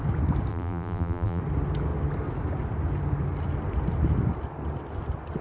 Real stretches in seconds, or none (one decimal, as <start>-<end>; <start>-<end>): 0.0-0.5; 1.4-5.4